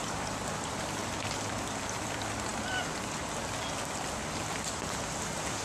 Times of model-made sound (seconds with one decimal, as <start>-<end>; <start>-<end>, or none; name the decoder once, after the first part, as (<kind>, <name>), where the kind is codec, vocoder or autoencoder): none